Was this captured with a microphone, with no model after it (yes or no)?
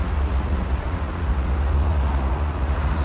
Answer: no